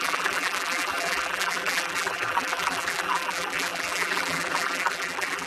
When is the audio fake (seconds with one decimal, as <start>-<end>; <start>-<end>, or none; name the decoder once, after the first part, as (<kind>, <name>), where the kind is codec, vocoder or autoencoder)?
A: 0.0-5.5 (vocoder, BigVGAN v2)

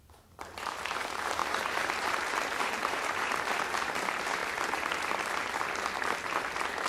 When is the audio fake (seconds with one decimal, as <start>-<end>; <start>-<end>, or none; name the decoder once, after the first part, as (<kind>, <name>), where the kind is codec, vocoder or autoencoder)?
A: 0.0-4.4 (vocoder, BigVGAN v2)

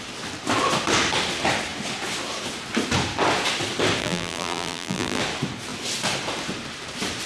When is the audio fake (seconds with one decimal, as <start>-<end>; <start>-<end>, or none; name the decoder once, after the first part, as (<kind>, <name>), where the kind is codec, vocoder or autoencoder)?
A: 4.0-5.2 (vocoder, BigVGAN v2)

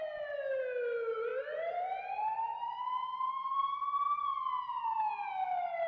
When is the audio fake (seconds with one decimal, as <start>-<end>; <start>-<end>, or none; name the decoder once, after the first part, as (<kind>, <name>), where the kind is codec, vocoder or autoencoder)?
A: 1.3-4.2 (vocoder, BigVGAN v2)

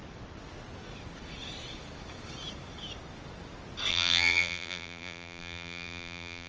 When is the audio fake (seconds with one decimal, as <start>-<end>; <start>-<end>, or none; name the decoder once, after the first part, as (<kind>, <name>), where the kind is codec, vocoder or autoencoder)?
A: 3.9-6.5 (vocoder, BigVGAN v2)

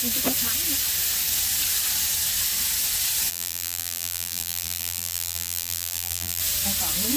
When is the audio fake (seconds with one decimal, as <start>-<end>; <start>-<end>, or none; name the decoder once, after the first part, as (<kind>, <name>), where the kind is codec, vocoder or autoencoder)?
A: 3.3-6.4 (vocoder, BigVGAN v2)

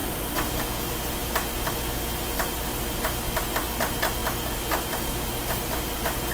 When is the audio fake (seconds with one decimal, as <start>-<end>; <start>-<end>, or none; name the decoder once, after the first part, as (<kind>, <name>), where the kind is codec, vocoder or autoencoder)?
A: 0.0-0.6 (vocoder, BigVGAN v2)